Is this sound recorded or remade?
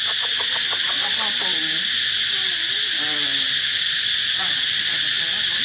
recorded